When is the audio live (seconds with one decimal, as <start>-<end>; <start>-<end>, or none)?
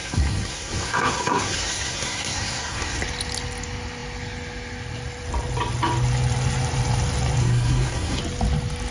3.0-7.4; 8.2-8.9